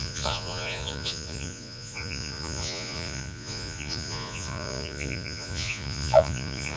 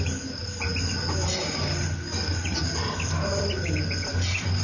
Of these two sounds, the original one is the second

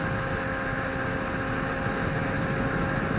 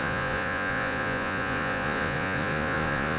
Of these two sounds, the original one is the first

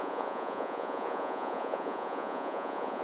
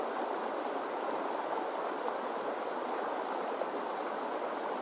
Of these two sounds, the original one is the second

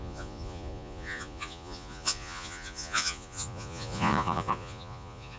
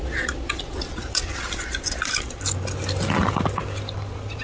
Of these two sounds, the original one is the second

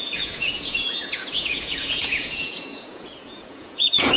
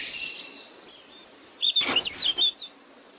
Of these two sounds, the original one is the second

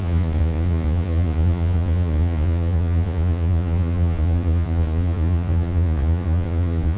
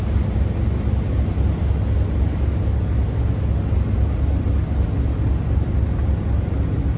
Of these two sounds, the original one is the second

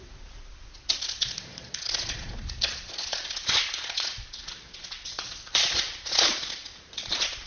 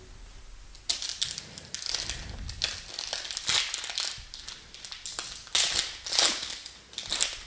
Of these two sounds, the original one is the second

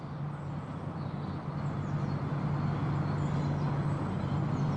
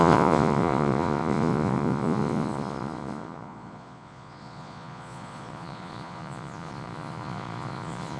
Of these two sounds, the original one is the first